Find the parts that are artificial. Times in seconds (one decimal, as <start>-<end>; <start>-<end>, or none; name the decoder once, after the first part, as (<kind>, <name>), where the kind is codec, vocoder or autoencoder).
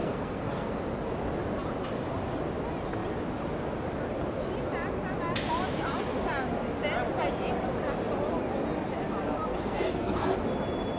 0.0-0.8 (codec, SNAC); 9.5-10.4